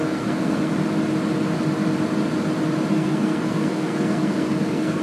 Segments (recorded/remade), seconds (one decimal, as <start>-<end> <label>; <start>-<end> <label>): 0.0-0.7 remade; 0.7-2.9 recorded; 2.9-5.0 remade